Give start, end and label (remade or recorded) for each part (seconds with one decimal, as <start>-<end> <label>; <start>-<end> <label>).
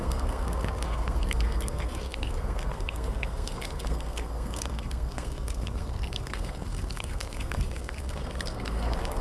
0.0-9.2 remade